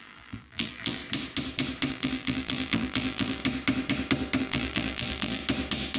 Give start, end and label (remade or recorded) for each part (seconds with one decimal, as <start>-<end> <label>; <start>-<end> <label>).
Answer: 0.0-1.0 remade; 1.0-1.9 recorded; 1.9-3.4 remade; 3.4-4.4 recorded; 4.4-5.4 remade; 5.4-6.0 recorded